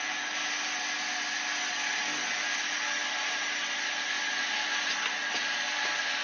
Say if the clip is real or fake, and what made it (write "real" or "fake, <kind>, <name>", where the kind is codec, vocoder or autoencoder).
real